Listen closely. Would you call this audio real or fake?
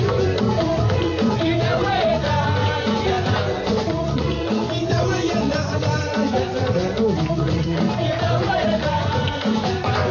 fake